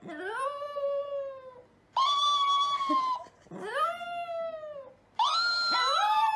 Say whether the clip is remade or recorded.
recorded